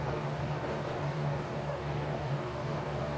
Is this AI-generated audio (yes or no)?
yes